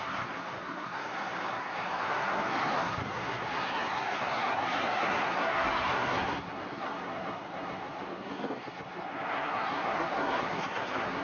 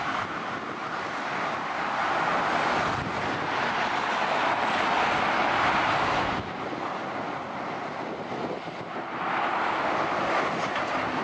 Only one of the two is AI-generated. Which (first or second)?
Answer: first